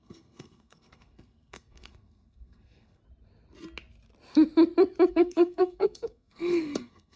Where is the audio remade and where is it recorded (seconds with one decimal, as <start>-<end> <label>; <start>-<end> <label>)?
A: 0.0-3.0 remade; 3.0-5.1 recorded; 5.1-7.2 remade